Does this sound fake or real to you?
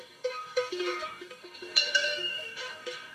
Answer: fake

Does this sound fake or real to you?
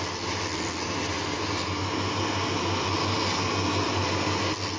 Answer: real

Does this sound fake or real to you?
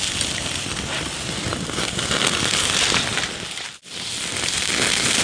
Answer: real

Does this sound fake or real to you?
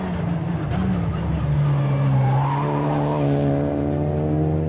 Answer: real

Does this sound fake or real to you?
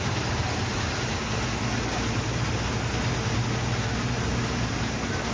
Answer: real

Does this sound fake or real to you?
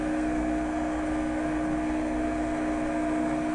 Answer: fake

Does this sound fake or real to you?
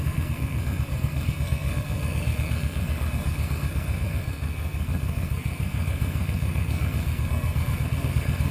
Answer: fake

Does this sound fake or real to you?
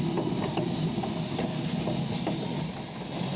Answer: real